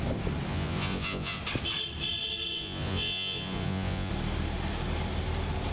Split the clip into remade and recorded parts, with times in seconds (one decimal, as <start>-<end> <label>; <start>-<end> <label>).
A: 0.0-0.5 recorded; 0.5-1.4 remade; 1.4-2.5 recorded; 2.5-4.1 remade; 4.1-5.7 recorded